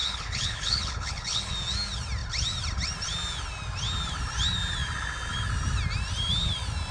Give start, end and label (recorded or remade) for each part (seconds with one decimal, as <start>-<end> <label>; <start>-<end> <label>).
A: 0.0-1.5 remade; 1.5-6.9 recorded

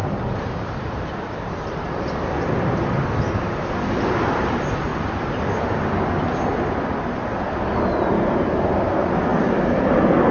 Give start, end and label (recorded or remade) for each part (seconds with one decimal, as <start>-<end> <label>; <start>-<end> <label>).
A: 0.0-4.0 remade; 4.0-7.2 recorded; 7.2-8.3 remade; 8.3-9.3 recorded; 9.3-9.9 remade; 9.9-10.3 recorded

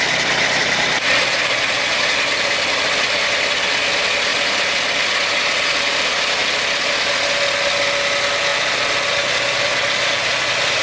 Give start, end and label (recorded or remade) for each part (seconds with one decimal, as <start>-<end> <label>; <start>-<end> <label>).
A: 0.0-10.8 recorded

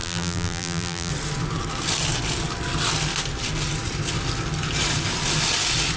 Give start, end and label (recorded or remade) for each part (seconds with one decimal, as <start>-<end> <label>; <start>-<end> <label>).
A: 0.0-1.1 remade; 1.1-6.0 recorded

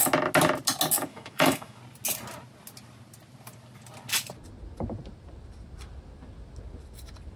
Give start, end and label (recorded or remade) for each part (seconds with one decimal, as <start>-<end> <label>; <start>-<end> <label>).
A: 0.0-1.1 recorded; 1.1-1.8 remade; 1.8-7.4 recorded